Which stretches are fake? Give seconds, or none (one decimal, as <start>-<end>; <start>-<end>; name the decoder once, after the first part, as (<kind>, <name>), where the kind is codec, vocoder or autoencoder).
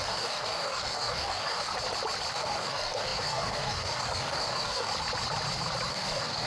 0.0-1.7 (codec, DAC); 2.3-4.9; 5.9-6.5